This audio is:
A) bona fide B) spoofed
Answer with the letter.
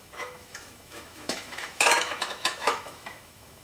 B